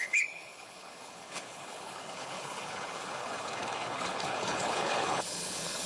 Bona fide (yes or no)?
no